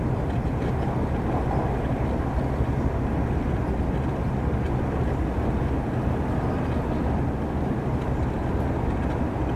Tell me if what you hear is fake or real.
real